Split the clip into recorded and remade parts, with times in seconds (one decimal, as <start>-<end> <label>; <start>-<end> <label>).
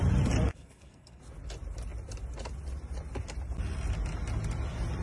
0.0-0.5 recorded; 0.5-1.2 remade; 1.2-5.0 recorded